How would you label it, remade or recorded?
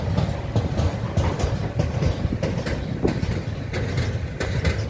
recorded